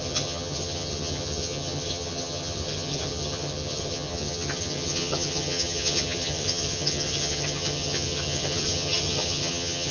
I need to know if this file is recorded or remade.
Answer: remade